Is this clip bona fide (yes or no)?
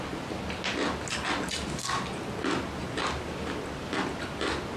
yes